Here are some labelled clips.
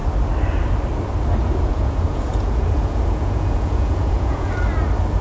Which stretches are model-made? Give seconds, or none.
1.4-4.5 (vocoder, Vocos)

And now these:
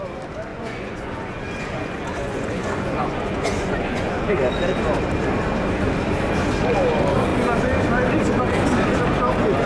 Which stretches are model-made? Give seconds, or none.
0.5-4.4 (vocoder, Vocos)